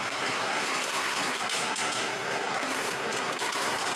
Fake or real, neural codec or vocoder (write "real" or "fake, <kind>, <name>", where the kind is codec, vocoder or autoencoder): fake, codec, SNAC